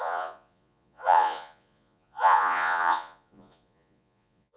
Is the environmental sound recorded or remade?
remade